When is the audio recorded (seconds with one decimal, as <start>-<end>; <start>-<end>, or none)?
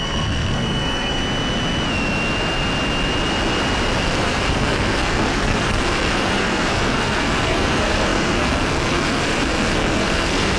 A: 1.2-4.0